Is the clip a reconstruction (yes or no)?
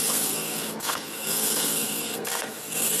yes